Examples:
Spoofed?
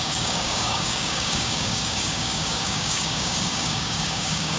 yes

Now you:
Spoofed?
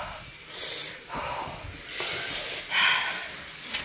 no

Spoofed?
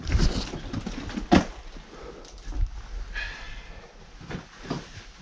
no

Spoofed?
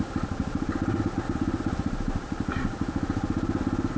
no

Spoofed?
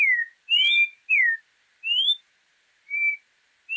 no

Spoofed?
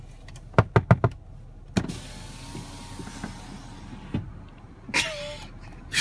no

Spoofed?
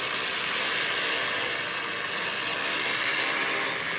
no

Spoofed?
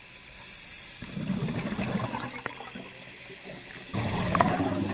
no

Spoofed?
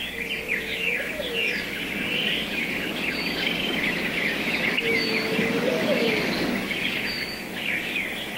yes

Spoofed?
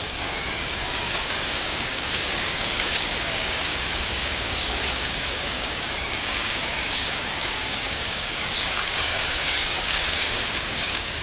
yes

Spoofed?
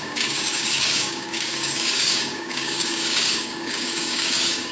yes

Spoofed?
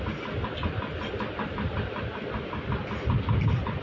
no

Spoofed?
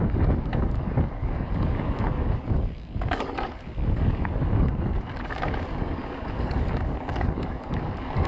yes